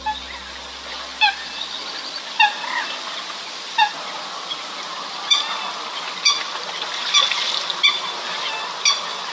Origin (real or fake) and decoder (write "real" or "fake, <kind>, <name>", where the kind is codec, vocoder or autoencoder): real